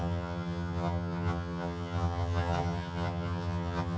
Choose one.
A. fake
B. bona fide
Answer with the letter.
A